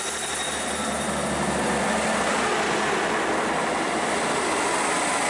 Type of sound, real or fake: real